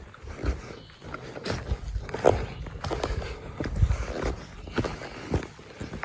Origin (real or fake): real